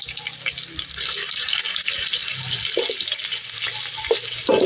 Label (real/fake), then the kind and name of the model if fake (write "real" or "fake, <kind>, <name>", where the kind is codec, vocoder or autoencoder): real